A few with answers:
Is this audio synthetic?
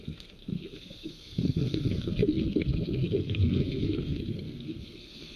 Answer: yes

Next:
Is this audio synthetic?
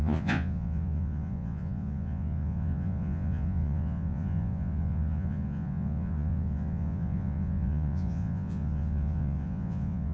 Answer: yes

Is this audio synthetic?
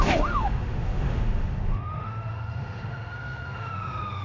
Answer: yes